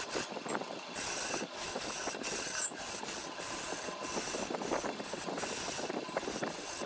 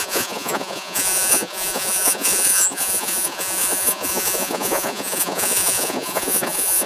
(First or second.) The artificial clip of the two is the second